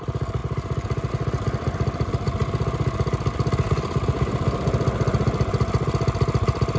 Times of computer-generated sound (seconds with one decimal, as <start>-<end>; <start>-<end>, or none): none